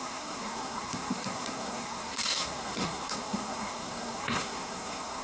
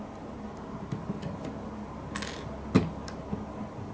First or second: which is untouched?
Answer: second